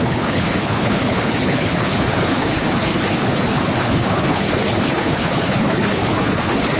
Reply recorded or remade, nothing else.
remade